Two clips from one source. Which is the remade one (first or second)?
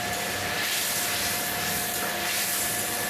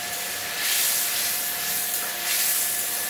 second